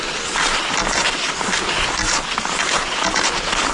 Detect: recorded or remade recorded